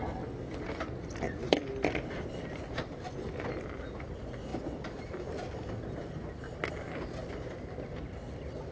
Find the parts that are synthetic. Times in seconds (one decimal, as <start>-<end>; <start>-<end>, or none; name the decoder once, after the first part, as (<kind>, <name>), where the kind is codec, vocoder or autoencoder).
none